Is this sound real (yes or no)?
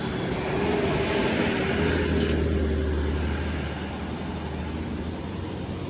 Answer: yes